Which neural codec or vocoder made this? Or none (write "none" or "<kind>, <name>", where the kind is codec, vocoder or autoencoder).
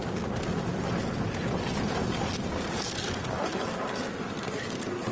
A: none